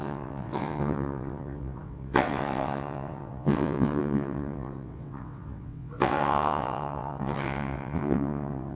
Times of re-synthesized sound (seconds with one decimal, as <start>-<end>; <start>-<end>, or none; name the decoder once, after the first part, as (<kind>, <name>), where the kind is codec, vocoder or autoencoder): 0.0-8.7 (vocoder, WaveNeXt)